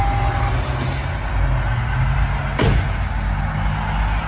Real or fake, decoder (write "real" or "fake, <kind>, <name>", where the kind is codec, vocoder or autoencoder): real